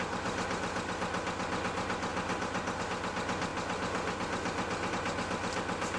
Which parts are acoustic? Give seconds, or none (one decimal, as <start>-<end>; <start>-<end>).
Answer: 0.0-6.0